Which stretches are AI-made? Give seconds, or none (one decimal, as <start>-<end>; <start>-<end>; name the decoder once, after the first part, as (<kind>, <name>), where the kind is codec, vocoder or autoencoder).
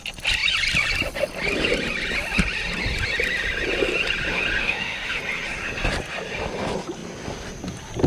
4.6-5.2 (autoencoder, DAC-VAE)